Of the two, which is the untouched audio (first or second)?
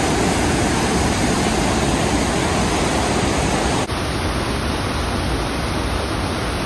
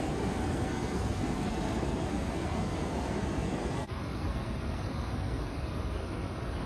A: first